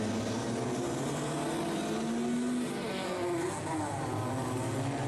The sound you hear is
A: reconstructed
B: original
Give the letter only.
B